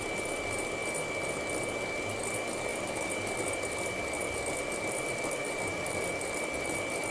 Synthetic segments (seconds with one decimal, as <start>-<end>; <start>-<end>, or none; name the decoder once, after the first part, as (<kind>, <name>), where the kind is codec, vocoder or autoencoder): 2.7-7.1 (vocoder, BigVGAN v2)